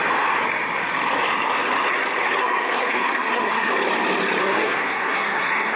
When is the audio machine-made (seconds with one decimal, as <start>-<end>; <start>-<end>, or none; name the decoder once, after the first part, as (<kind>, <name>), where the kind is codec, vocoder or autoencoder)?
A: 2.4-3.7 (codec, SNAC); 4.4-5.8